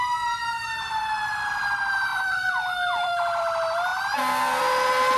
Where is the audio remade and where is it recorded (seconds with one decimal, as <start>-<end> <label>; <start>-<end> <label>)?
0.0-2.1 recorded; 2.1-3.4 remade; 3.4-5.2 recorded